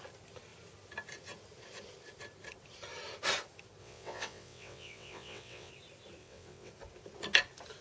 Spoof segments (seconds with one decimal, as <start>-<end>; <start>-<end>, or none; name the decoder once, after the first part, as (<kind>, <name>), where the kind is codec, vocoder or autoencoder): 3.8-5.7 (vocoder, WaveNeXt); 6.2-6.7